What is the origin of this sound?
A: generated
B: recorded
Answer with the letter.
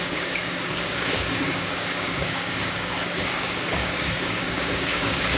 A